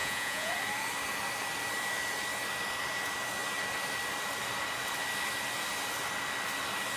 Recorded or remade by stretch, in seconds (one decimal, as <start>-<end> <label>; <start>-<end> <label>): 0.0-0.5 remade; 0.5-7.0 recorded